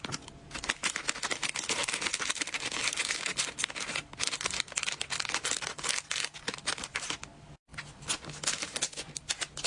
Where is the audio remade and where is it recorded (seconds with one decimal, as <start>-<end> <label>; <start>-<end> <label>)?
0.0-9.7 recorded